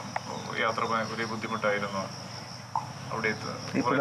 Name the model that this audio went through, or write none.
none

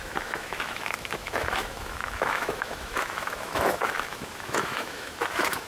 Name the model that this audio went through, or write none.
autoencoder, DAC-VAE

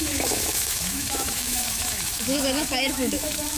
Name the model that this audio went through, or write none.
autoencoder, DAC-VAE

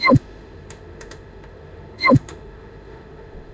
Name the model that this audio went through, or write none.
autoencoder, DAC-VAE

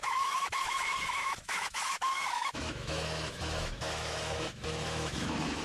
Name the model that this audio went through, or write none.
autoencoder, DAC-VAE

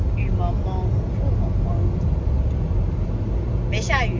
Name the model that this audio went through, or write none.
none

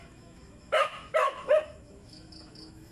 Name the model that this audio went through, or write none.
autoencoder, DAC-VAE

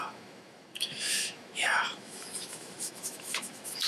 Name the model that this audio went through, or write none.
autoencoder, DAC-VAE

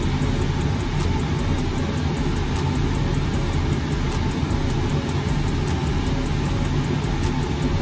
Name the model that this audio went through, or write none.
none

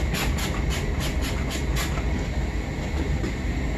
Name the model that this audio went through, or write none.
none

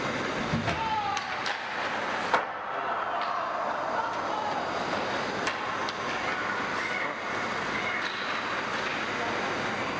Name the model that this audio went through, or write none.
none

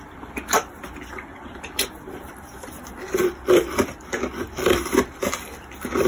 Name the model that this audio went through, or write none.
none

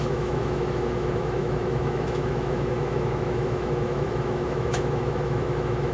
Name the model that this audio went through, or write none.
autoencoder, DAC-VAE